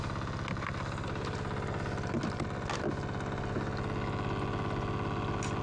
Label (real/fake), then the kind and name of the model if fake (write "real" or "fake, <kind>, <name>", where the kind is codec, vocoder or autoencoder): real